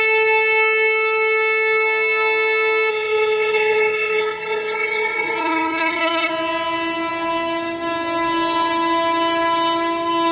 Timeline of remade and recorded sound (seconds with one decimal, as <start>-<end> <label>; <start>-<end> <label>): 0.0-2.9 recorded; 2.9-6.3 remade; 6.3-10.3 recorded